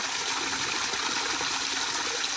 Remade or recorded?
recorded